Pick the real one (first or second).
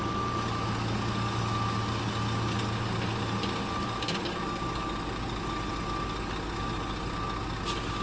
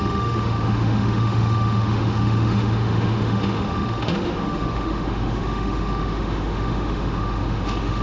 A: first